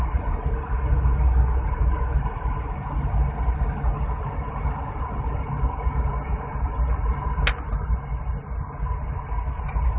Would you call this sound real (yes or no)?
yes